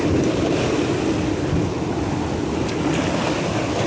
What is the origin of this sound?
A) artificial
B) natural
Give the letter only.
B